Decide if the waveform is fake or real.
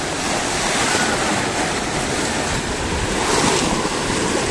fake